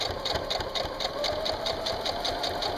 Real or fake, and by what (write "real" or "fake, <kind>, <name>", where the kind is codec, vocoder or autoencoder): real